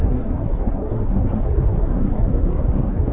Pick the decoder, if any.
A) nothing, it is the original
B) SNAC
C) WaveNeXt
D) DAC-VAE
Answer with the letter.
B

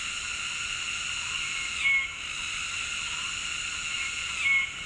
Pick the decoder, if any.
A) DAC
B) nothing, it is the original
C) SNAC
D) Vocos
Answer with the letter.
B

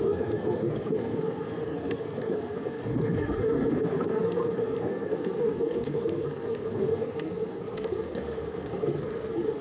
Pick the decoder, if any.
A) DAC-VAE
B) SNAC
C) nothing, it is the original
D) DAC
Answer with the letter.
B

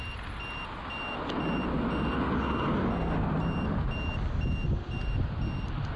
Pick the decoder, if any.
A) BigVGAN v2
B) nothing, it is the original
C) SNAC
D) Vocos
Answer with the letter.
B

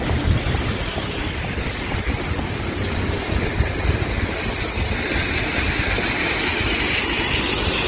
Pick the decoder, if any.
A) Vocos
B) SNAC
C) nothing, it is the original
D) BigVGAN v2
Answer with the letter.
C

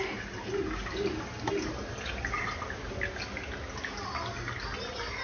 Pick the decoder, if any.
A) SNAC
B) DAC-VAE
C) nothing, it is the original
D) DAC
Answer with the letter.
C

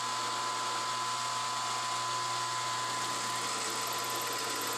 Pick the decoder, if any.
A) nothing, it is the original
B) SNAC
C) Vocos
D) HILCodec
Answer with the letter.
A